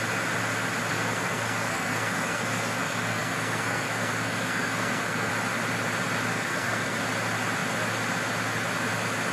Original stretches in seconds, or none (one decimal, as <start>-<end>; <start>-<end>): 0.0-0.9; 5.3-6.3; 7.0-9.3